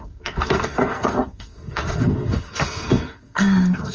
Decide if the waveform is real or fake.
fake